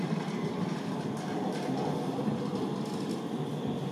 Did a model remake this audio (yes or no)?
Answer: no